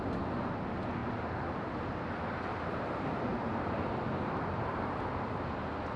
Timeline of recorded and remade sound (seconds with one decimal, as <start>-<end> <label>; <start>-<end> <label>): 0.0-6.0 recorded